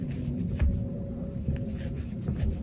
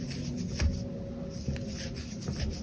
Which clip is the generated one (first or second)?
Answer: first